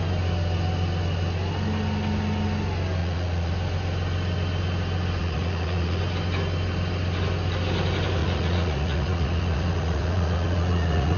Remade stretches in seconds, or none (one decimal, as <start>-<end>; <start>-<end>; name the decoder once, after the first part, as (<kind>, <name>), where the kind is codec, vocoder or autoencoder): 3.0-3.5 (vocoder, Vocos); 5.2-6.0; 8.2-11.2